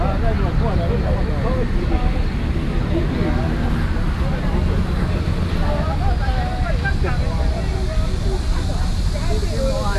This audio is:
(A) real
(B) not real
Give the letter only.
A